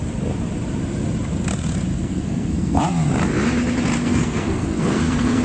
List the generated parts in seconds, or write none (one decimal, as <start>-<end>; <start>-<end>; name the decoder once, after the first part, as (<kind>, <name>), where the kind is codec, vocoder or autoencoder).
1.9-2.8 (codec, SNAC); 4.0-5.4